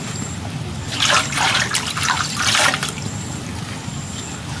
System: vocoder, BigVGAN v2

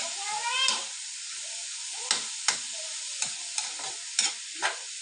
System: none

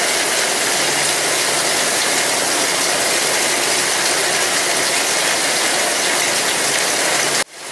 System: none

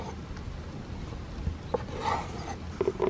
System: none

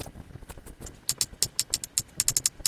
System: none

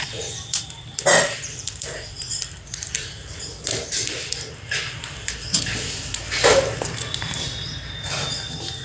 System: vocoder, BigVGAN v2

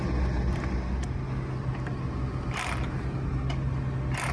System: none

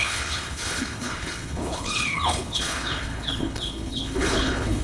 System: codec, HILCodec